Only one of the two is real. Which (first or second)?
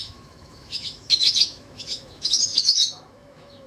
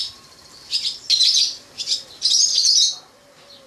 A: second